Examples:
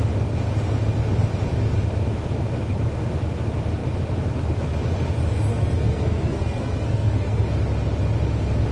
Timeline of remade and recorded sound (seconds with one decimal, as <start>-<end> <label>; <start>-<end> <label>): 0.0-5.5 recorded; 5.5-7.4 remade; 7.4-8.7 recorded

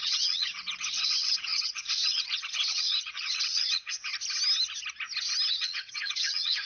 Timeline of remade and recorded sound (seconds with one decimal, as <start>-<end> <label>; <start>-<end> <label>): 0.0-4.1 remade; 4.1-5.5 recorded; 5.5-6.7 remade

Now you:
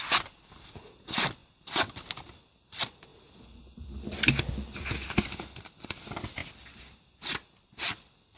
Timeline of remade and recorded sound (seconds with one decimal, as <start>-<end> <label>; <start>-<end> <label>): 0.0-8.4 recorded